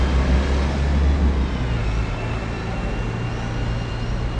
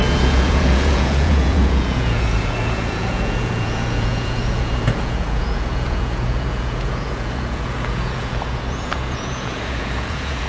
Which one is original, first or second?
first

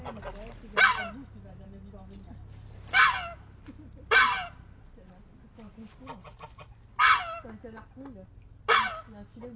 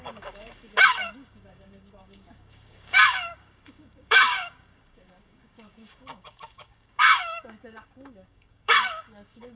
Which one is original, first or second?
first